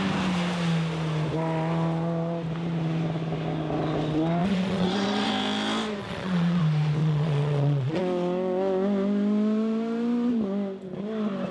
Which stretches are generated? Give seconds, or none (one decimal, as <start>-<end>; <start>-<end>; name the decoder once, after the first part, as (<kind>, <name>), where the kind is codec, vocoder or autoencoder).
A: 4.4-5.3 (vocoder, Vocos); 6.0-6.6; 7.0-8.0